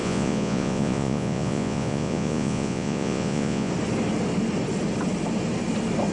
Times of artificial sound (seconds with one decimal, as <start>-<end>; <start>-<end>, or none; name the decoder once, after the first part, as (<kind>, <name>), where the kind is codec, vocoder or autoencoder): 0.0-3.7 (vocoder, Vocos)